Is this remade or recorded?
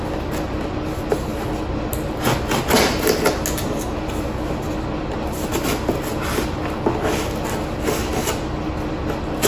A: recorded